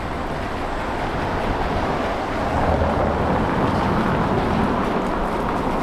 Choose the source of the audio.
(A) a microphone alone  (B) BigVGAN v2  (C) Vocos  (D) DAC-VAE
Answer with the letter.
A